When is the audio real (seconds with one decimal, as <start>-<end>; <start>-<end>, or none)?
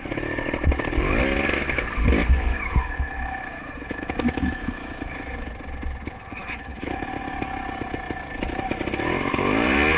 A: 0.0-2.5; 5.5-6.4; 7.1-10.0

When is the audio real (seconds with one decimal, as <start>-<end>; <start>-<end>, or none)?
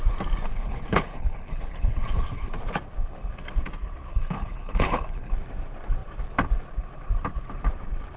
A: 0.0-0.5; 2.5-4.1; 5.3-8.2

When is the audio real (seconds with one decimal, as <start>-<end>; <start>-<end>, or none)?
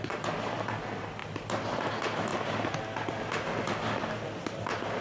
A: 0.0-5.0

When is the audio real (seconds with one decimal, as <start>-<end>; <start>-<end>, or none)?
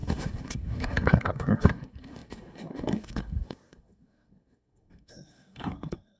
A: none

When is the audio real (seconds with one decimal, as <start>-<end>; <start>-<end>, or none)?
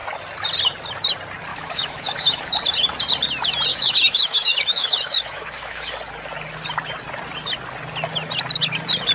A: 0.0-1.5; 2.5-3.7; 5.9-9.1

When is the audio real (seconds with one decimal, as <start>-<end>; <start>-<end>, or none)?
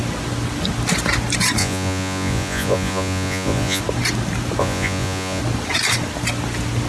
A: 0.0-1.6; 3.8-4.6; 5.4-6.9